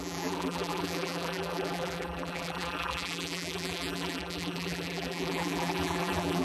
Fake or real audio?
fake